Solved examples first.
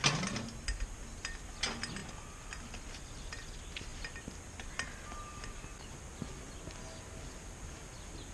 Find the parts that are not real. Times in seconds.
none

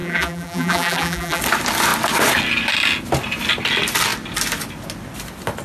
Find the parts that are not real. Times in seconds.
0.0-1.4 (vocoder, BigVGAN v2)

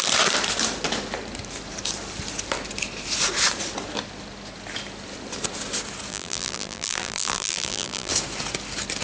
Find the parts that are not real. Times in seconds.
6.1-8.1 (vocoder, BigVGAN v2)